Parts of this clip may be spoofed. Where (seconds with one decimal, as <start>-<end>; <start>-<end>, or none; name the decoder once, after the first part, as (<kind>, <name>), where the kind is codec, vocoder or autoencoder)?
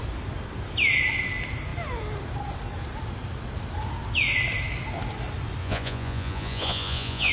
5.6-7.3 (vocoder, Vocos)